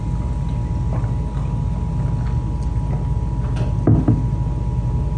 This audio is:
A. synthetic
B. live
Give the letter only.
B